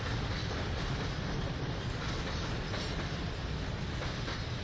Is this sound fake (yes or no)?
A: no